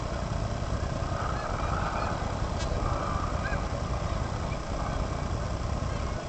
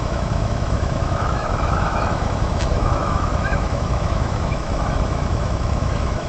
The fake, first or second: second